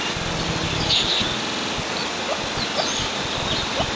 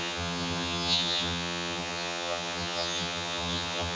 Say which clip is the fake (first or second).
second